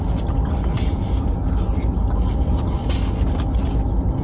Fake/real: real